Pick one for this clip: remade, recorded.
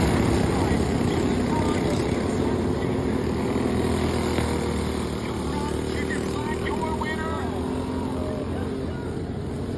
recorded